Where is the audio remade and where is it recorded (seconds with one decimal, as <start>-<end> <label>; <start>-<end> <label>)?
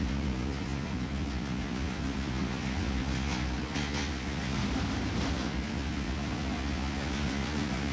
0.0-4.6 remade; 4.6-5.3 recorded; 5.3-7.9 remade